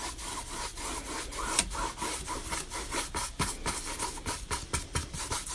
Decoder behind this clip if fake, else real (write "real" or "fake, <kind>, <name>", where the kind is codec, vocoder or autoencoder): real